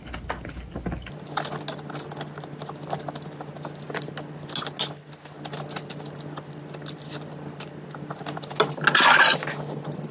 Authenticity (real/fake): real